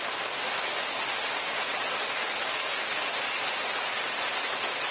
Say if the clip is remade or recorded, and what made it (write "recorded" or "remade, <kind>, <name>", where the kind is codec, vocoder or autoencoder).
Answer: recorded